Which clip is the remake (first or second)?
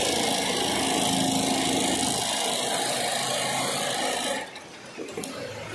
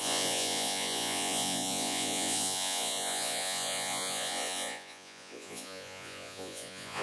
second